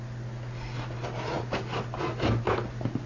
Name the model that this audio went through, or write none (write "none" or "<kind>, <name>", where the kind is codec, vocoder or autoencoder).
none